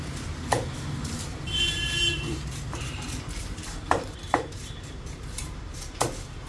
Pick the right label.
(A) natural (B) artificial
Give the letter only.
B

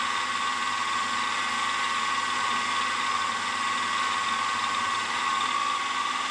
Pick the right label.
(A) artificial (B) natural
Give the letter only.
B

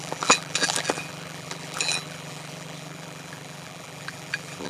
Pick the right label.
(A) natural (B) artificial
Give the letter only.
B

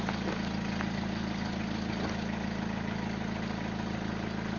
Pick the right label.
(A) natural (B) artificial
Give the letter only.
A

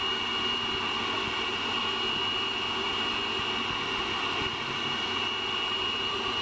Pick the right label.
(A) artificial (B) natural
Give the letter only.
B